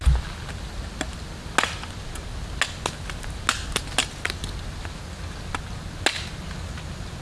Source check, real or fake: real